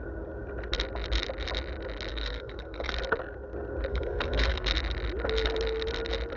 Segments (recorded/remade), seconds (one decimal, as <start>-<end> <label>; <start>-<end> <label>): 0.0-2.1 recorded; 2.1-2.9 remade; 2.9-3.9 recorded; 3.9-4.7 remade; 4.7-6.4 recorded